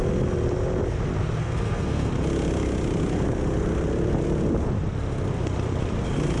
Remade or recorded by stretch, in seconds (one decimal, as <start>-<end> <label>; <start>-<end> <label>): 0.0-1.4 recorded; 1.4-2.1 remade; 2.1-6.4 recorded